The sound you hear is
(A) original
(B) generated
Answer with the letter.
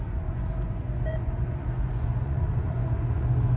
B